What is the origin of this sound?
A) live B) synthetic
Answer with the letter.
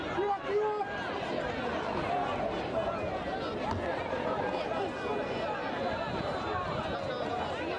A